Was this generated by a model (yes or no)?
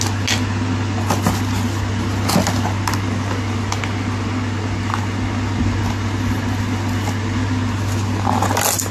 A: no